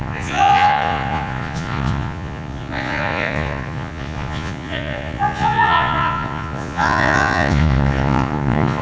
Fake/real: fake